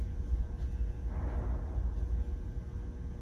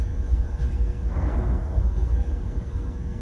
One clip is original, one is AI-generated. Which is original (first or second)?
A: first